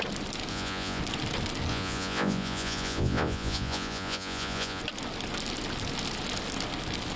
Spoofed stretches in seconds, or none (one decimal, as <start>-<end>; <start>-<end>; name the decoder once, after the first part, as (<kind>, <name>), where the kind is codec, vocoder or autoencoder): 0.5-1.0 (vocoder, Vocos); 1.7-4.8